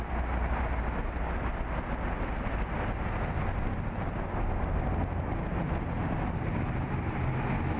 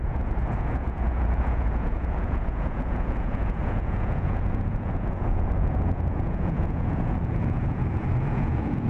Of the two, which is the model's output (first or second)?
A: second